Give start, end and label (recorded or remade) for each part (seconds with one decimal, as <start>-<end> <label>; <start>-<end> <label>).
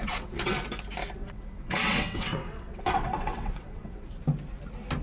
0.0-0.5 remade; 0.5-1.2 recorded; 1.2-4.2 remade; 4.2-5.0 recorded